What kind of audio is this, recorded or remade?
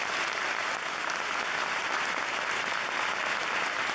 recorded